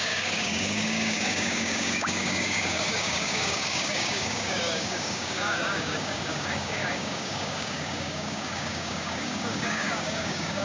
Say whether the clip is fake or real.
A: fake